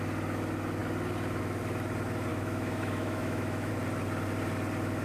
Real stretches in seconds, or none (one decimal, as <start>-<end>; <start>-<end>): 0.0-2.3; 3.7-5.0